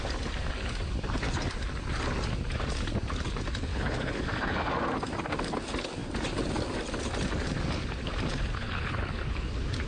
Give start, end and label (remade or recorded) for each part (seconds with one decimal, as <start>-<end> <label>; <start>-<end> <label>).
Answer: 0.0-3.7 recorded; 3.7-4.2 remade; 4.2-8.3 recorded; 8.3-9.5 remade; 9.5-9.9 recorded

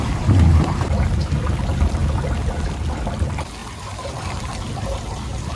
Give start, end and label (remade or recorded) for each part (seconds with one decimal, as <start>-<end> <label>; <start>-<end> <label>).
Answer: 0.0-2.0 remade; 2.0-2.7 recorded; 2.7-3.6 remade; 3.6-4.1 recorded; 4.1-5.6 remade

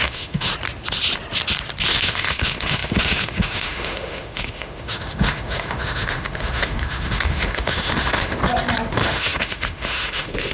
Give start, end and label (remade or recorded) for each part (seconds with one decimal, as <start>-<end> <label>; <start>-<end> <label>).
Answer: 0.0-0.5 remade; 0.5-1.9 recorded; 1.9-8.4 remade; 8.4-8.9 recorded; 8.9-10.5 remade

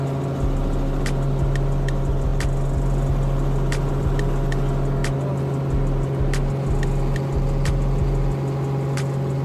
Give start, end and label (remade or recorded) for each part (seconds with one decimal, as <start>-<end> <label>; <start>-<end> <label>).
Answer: 0.0-9.4 recorded

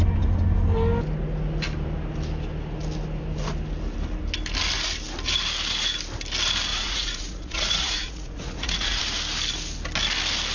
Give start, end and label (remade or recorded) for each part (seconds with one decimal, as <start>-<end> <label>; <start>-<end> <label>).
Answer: 0.0-6.7 recorded; 6.7-9.0 remade; 9.0-10.5 recorded

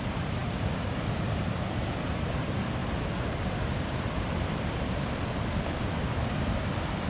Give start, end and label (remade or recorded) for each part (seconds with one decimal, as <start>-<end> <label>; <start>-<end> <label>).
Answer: 0.0-2.8 remade; 2.8-3.3 recorded; 3.3-7.1 remade